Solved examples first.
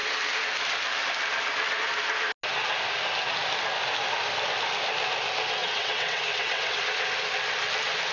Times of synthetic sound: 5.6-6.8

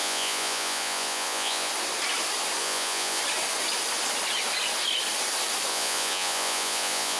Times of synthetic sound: 0.0-1.7; 2.6-3.2; 5.7-7.2

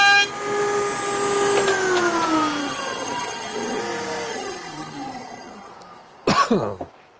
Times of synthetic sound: 2.6-3.8; 4.3-5.7

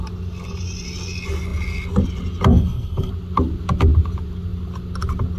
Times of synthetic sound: 2.5-3.1

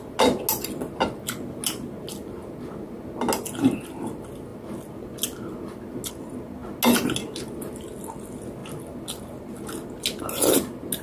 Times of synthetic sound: none

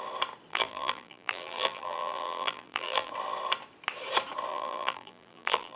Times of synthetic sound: 0.5-3.1; 4.5-5.8

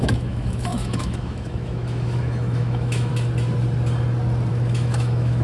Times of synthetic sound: 0.0-3.1; 4.5-5.4